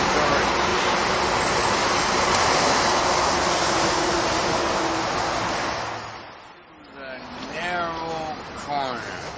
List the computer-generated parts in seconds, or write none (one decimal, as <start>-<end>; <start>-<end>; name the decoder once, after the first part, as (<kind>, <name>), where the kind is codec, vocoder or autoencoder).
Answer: none